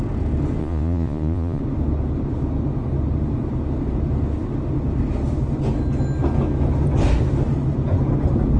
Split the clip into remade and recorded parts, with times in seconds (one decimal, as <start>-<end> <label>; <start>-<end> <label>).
0.0-0.6 recorded; 0.6-1.6 remade; 1.6-8.6 recorded